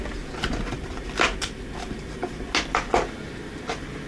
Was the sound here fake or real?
real